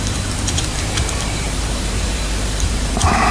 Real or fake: fake